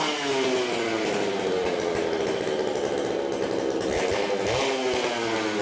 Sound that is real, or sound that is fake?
real